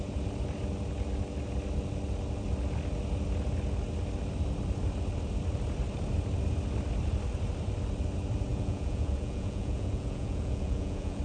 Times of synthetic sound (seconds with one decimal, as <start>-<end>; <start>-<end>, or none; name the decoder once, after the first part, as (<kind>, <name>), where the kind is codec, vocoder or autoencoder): 8.5-11.2 (vocoder, Vocos)